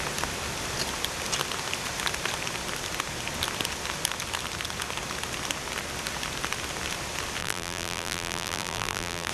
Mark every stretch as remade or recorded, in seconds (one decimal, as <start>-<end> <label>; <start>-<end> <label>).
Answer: 0.0-7.4 recorded; 7.4-9.3 remade